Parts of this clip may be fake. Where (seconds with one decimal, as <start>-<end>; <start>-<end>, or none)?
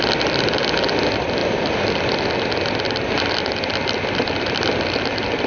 none